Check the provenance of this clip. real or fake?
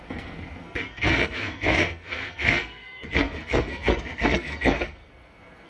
fake